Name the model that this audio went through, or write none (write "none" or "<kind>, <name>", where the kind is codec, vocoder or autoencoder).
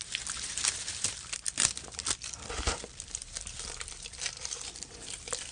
vocoder, BigVGAN v2